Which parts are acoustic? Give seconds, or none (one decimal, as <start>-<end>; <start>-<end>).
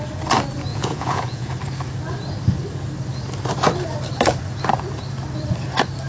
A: 0.0-0.7; 1.5-6.1